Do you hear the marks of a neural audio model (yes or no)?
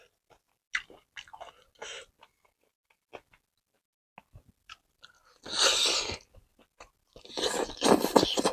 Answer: no